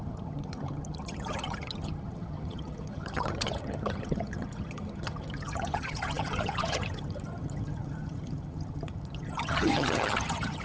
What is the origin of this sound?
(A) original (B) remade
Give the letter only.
B